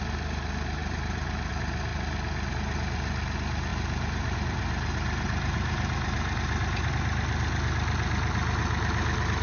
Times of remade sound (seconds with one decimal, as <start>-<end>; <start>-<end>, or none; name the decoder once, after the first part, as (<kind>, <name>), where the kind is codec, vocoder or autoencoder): 0.8-1.5 (vocoder, BigVGAN v2); 3.7-6.9